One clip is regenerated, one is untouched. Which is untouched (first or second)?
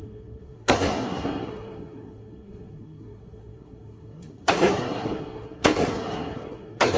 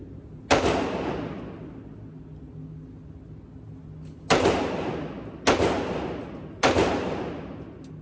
second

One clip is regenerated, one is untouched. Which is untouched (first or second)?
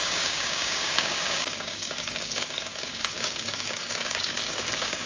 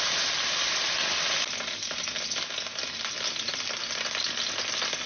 second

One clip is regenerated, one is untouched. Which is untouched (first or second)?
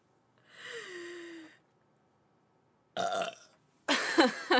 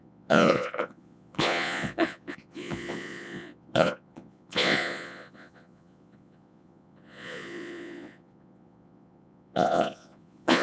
first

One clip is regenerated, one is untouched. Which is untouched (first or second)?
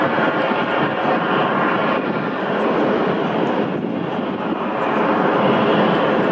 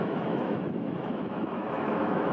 first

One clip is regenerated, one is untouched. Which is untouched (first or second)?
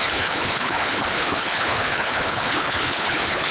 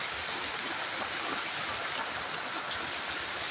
second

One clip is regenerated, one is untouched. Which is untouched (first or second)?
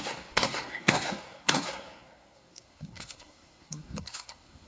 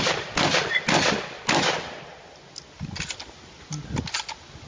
second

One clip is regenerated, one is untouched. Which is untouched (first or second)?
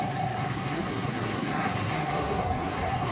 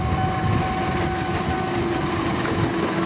second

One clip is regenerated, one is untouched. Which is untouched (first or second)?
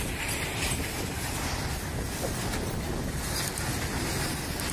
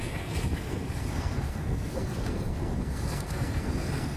first